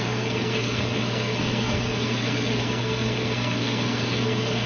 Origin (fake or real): fake